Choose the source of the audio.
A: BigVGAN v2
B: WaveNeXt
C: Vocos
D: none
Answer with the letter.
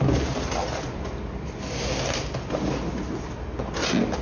D